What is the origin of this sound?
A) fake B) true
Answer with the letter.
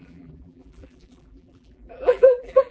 A